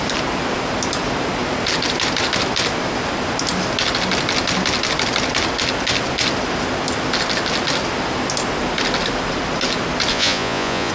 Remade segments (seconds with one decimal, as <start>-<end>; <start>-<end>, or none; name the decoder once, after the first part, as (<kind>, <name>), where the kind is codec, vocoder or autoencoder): 10.1-10.9 (vocoder, Vocos)